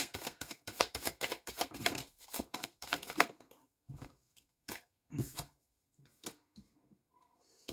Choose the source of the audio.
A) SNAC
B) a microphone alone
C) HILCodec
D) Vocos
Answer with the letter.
A